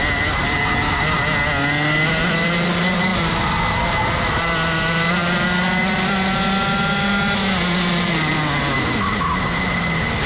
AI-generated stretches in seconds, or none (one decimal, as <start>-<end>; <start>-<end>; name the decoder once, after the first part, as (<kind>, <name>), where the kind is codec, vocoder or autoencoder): none